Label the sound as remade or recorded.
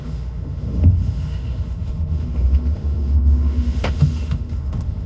remade